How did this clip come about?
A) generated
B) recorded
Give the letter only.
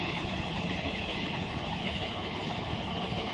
A